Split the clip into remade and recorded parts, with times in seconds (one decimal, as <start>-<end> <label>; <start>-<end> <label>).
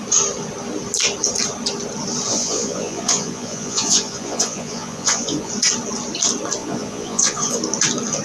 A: 0.0-2.3 recorded; 2.3-5.5 remade; 5.5-6.6 recorded; 6.6-7.6 remade; 7.6-8.2 recorded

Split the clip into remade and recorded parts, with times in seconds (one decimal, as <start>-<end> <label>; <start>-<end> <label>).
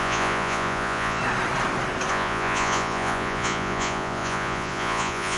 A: 0.0-1.2 remade; 1.2-2.1 recorded; 2.1-5.4 remade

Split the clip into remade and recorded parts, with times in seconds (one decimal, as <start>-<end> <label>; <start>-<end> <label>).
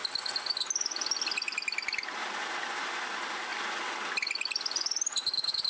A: 0.0-2.2 recorded; 2.2-3.5 remade; 3.5-4.3 recorded; 4.3-5.7 remade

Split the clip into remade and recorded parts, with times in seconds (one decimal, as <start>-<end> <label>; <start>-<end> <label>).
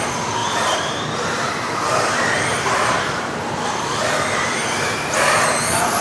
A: 0.0-0.4 recorded; 0.4-4.0 remade; 4.0-6.0 recorded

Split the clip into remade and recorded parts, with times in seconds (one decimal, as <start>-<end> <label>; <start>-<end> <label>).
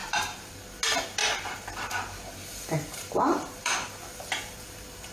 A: 0.0-0.5 remade; 0.5-1.2 recorded; 1.2-3.7 remade; 3.7-5.1 recorded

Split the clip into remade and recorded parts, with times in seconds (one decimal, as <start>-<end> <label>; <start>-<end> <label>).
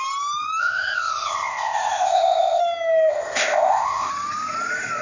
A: 0.0-0.6 recorded; 0.6-2.6 remade; 2.6-3.1 recorded; 3.1-4.1 remade; 4.1-5.0 recorded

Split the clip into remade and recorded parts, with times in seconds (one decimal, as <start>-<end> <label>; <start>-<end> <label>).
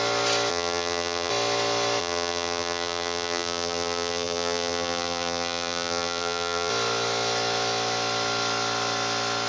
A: 0.0-0.5 recorded; 0.5-1.3 remade; 1.3-2.0 recorded; 2.0-6.7 remade; 6.7-9.5 recorded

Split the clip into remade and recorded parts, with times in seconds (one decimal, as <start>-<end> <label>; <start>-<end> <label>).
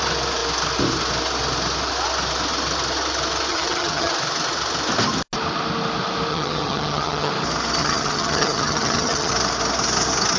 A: 0.0-3.5 recorded; 3.5-4.1 remade; 4.1-6.3 recorded; 6.3-7.3 remade; 7.3-7.8 recorded; 7.8-9.3 remade; 9.3-10.4 recorded